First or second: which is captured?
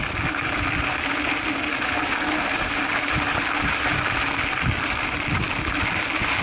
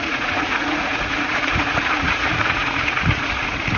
first